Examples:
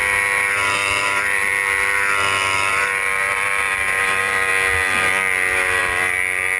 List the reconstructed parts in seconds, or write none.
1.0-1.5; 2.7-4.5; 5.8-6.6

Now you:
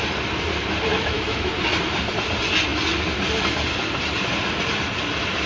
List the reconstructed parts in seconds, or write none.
0.9-1.5

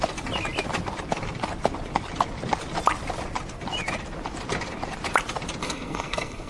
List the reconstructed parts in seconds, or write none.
5.6-6.5

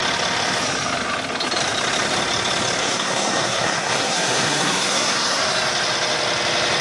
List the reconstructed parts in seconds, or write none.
2.8-5.4

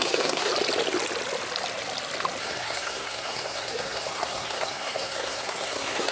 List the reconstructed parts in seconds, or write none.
0.0-0.5; 2.4-6.1

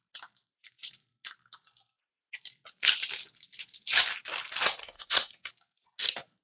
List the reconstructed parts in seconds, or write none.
4.8-5.5

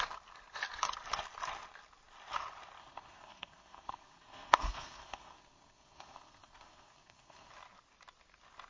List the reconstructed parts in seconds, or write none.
2.8-7.5